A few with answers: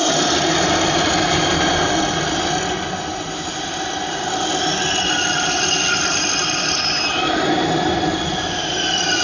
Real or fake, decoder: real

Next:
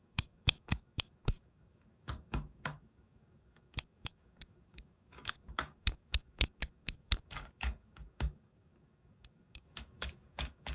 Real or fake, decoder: fake, codec, DAC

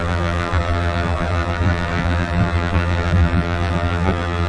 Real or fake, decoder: fake, vocoder, BigVGAN v2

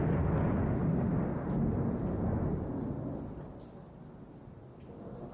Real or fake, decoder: real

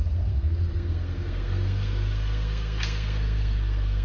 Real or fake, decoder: fake, codec, SNAC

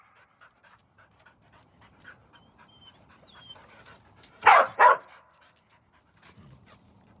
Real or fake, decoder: fake, vocoder, BigVGAN v2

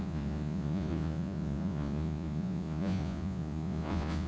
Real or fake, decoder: fake, vocoder, Vocos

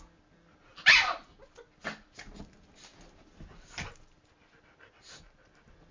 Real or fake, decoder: real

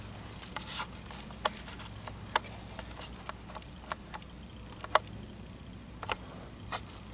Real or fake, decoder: real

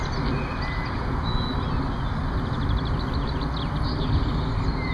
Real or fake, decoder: real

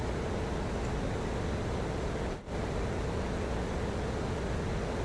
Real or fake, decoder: real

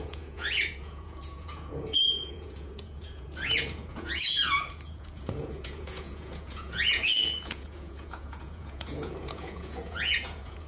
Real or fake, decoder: fake, vocoder, Vocos